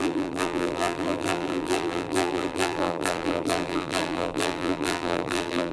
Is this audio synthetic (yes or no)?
yes